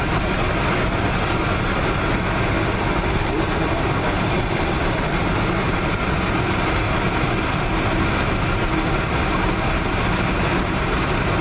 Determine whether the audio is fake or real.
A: real